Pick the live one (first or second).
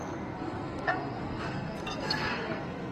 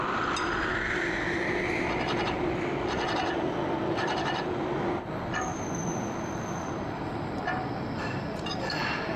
second